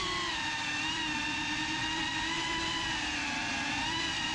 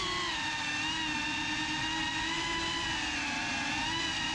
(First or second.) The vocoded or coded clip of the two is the first